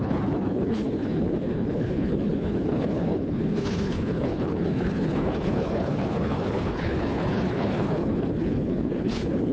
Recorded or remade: remade